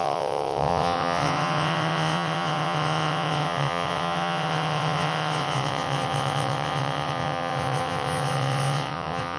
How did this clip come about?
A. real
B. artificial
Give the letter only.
B